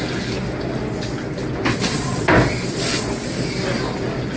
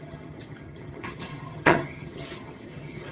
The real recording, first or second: first